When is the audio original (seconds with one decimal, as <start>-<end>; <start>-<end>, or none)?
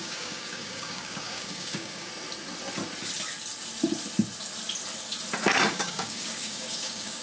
2.1-5.7